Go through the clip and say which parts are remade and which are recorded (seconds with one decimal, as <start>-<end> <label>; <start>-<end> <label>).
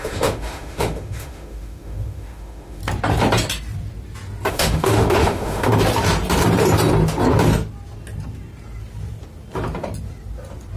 0.0-2.8 remade; 2.8-4.5 recorded; 4.5-5.7 remade; 5.7-10.8 recorded